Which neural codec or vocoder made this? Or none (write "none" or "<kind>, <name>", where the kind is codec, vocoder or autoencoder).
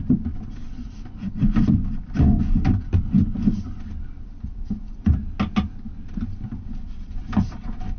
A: none